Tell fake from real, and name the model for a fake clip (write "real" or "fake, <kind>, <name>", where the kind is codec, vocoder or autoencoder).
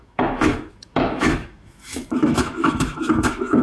fake, autoencoder, DAC-VAE